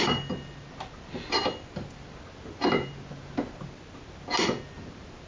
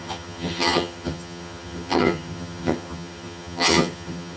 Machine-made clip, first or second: second